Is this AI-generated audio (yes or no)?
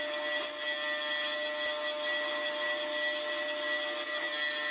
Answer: no